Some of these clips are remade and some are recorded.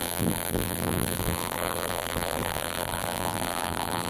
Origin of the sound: remade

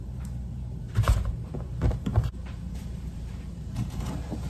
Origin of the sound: remade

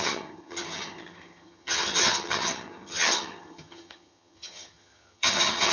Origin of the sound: remade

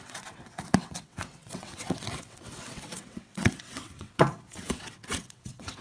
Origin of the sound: remade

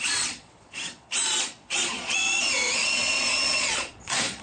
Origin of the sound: remade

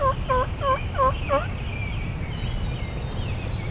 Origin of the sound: recorded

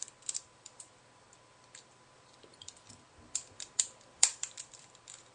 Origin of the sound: remade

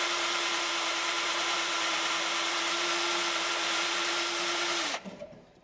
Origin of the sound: remade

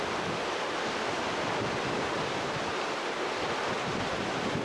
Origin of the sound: recorded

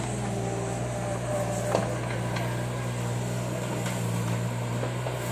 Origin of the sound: recorded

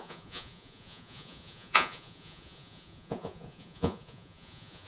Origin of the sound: remade